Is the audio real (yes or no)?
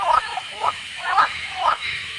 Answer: no